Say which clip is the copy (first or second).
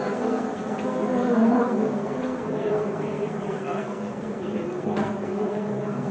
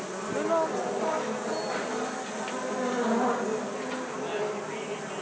first